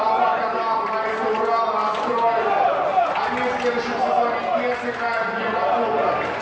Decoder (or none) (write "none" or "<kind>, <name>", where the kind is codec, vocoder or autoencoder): none